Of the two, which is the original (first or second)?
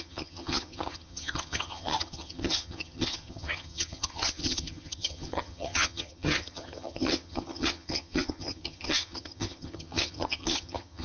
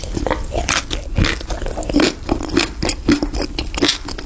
second